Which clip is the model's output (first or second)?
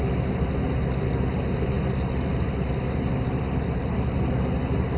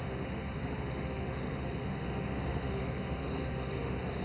second